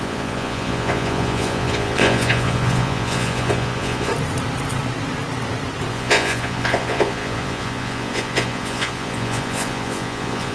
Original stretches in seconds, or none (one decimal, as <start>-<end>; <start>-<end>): 4.1-5.9